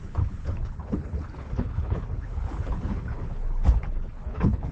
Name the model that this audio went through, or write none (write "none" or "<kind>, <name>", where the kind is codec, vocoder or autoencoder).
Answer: codec, HILCodec